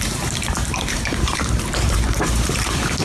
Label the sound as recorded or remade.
remade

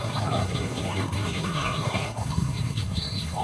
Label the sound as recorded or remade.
remade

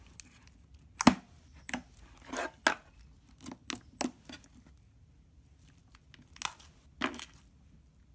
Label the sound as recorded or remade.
recorded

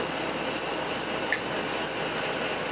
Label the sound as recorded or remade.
recorded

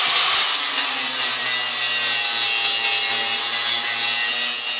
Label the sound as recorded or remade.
recorded